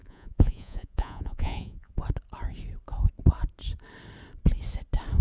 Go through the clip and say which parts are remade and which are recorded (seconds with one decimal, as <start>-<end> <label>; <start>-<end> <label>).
0.0-1.9 remade; 1.9-5.2 recorded